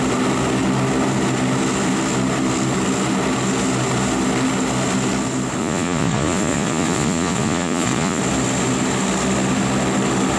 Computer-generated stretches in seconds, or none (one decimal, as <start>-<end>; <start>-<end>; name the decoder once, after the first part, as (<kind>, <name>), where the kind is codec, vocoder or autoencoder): 5.6-8.2 (vocoder, Vocos)